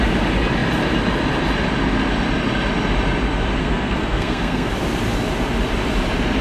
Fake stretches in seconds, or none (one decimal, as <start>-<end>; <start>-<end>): 3.6-4.7